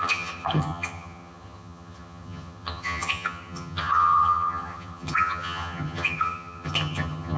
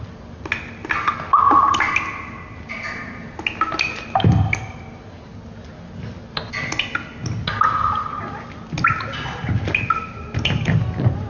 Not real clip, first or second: first